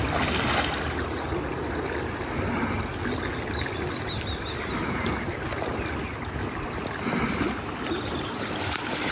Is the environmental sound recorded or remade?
recorded